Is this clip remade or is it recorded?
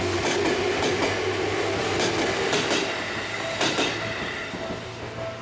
recorded